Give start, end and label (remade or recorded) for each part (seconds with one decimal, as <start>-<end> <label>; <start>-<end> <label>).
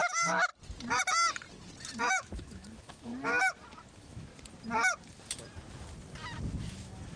0.0-0.5 remade; 0.5-2.0 recorded; 2.0-3.1 remade; 3.1-3.9 recorded; 3.9-4.3 remade; 4.3-6.6 recorded; 6.6-7.2 remade